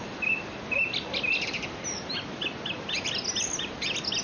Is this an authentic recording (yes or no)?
yes